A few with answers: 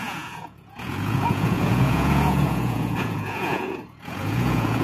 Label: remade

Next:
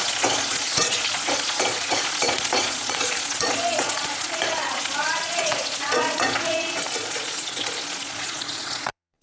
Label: remade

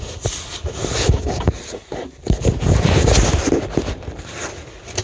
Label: remade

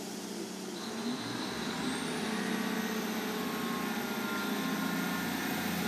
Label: recorded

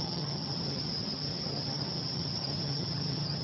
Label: remade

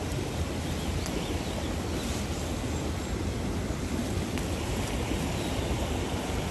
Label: recorded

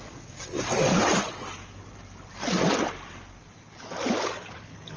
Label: recorded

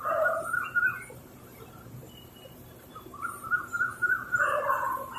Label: remade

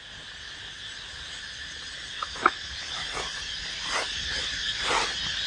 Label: recorded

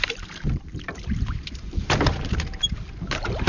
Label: remade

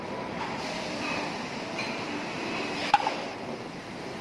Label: recorded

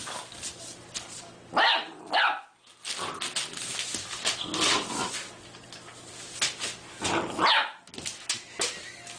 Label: recorded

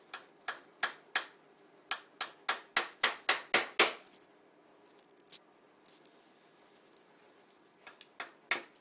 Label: recorded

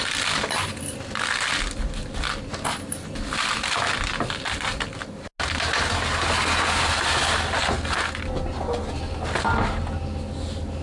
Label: recorded